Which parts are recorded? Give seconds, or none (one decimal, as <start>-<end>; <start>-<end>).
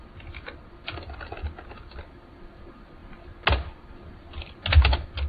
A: 0.0-5.3